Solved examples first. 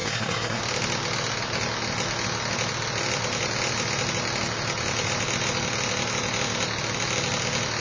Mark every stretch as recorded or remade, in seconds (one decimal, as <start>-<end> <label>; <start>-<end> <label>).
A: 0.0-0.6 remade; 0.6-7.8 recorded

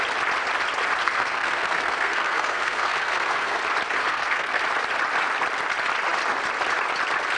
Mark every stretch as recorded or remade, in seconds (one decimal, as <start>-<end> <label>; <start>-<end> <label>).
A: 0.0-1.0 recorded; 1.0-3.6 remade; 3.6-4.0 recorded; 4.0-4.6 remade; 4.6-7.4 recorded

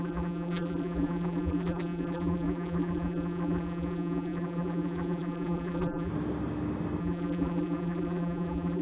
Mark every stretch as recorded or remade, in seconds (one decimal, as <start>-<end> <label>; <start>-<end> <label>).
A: 0.0-6.1 remade; 6.1-7.0 recorded; 7.0-8.8 remade

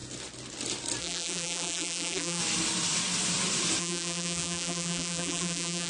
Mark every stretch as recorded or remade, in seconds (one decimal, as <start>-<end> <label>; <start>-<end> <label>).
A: 0.0-1.0 recorded; 1.0-2.4 remade; 2.4-3.8 recorded; 3.8-5.9 remade

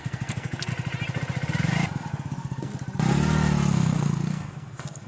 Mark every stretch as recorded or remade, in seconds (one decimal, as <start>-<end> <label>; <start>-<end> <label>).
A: 0.0-0.7 remade; 0.7-2.1 recorded; 2.1-2.7 remade; 2.7-3.7 recorded; 3.7-5.1 remade

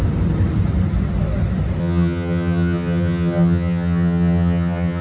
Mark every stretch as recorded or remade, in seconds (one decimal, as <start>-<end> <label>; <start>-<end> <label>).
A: 0.0-1.8 recorded; 1.8-5.0 remade

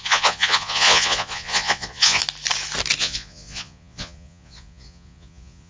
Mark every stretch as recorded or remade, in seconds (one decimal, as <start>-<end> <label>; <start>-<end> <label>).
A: 0.0-2.2 remade; 2.2-3.0 recorded; 3.0-5.7 remade